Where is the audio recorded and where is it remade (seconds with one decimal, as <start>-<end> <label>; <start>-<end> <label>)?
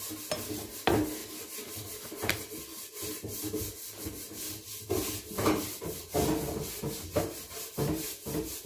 0.0-8.7 recorded